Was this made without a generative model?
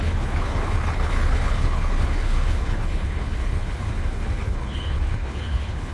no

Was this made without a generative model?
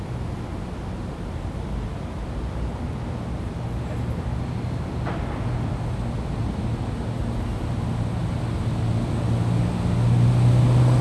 yes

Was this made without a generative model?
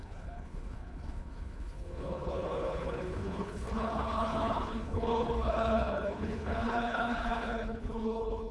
no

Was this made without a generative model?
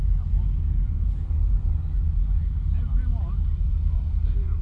yes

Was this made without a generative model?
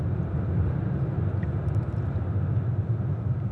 yes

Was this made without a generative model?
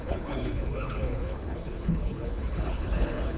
no